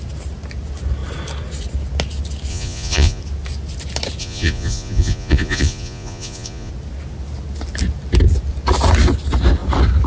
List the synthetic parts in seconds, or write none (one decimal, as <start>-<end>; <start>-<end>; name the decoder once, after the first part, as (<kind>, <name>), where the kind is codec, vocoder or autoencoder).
2.5-3.2 (vocoder, Vocos); 4.2-6.7